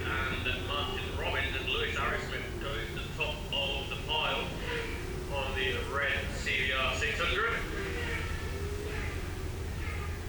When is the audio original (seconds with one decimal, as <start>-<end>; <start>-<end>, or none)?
0.0-2.7; 3.9-7.3; 8.3-10.3

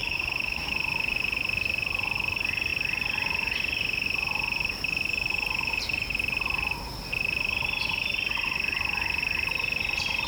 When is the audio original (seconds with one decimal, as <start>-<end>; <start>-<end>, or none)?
0.7-10.3